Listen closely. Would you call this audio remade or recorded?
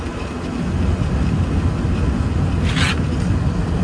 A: recorded